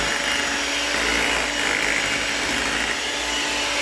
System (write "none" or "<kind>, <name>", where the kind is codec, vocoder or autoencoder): none